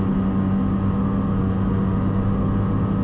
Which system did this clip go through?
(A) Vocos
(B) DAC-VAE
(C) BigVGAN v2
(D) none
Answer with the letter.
D